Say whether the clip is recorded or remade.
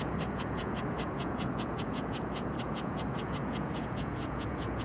remade